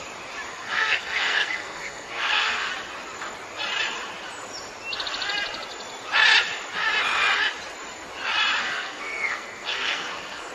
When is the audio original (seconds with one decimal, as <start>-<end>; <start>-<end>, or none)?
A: 0.0-0.5; 2.7-8.6